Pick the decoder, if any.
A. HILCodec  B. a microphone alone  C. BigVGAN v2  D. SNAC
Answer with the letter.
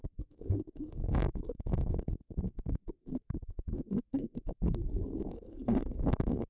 D